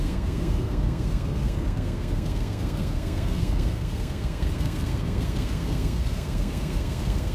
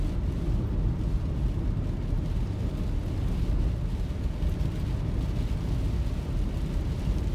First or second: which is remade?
first